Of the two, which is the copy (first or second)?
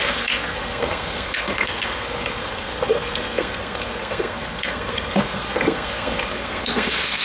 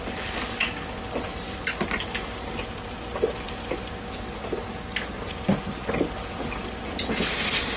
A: first